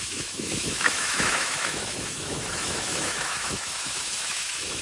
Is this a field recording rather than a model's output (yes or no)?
no